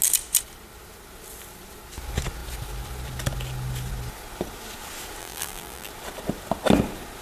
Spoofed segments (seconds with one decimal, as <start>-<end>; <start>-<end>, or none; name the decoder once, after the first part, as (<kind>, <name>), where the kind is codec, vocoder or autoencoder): 5.2-5.9 (vocoder, BigVGAN v2)